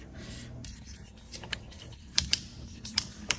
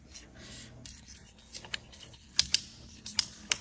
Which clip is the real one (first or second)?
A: second